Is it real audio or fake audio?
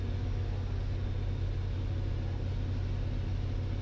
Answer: real